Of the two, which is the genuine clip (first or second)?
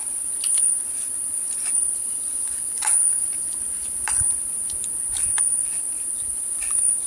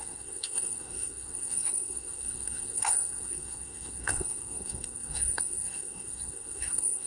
first